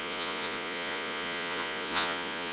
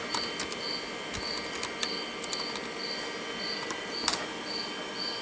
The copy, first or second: first